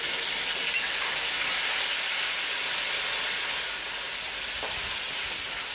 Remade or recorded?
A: recorded